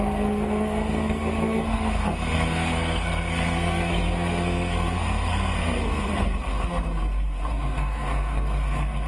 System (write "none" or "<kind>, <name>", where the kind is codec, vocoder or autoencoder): codec, SNAC